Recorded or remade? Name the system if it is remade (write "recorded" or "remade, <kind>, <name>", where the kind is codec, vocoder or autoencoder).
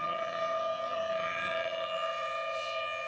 remade, vocoder, HiFi-GAN